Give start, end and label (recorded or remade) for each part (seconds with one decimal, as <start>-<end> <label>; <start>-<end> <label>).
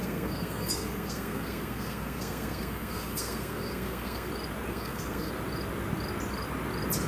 0.0-4.3 remade; 4.3-4.7 recorded; 4.7-5.3 remade; 5.3-7.1 recorded